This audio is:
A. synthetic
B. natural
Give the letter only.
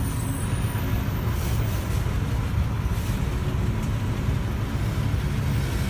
B